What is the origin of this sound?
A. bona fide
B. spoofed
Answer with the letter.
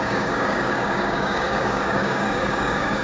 B